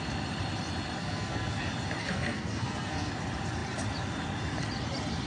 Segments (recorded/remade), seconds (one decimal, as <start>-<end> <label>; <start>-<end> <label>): 0.0-1.0 recorded; 1.0-1.6 remade; 1.6-2.0 recorded; 2.0-3.1 remade; 3.1-5.3 recorded